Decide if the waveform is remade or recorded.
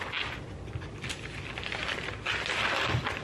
recorded